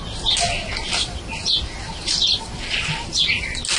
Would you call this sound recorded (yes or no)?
yes